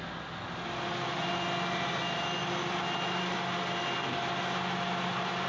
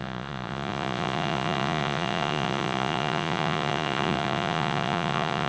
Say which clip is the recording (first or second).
first